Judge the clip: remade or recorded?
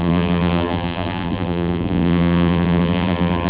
remade